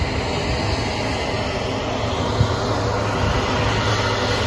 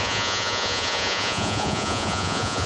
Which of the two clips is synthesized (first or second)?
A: second